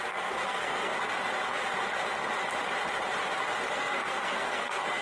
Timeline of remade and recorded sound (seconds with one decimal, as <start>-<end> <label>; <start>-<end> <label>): 0.0-0.9 remade; 0.9-3.7 recorded; 3.7-5.0 remade